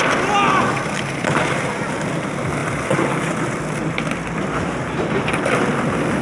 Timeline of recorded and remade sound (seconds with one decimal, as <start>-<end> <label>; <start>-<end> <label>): 0.0-6.2 recorded